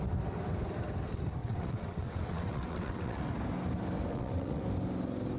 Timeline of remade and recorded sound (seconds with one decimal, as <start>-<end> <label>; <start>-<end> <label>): 0.0-1.4 recorded; 1.4-3.3 remade; 3.3-4.1 recorded; 4.1-4.6 remade; 4.6-5.4 recorded